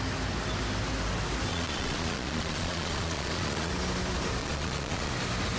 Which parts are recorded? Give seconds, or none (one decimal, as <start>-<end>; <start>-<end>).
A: 0.0-1.5; 3.7-4.4; 5.1-5.6